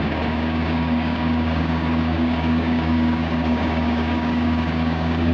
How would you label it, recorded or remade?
remade